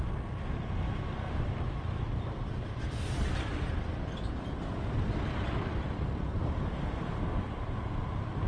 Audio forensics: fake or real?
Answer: fake